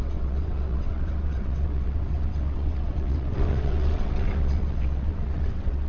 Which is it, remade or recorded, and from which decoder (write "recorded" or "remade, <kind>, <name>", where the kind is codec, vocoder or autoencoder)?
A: remade, vocoder, WaveNeXt